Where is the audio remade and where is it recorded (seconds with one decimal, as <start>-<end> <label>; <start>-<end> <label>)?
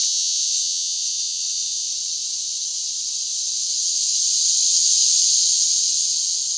0.0-1.9 remade; 1.9-6.6 recorded